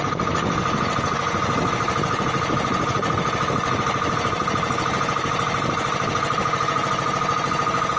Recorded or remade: recorded